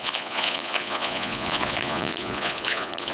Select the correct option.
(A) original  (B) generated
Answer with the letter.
B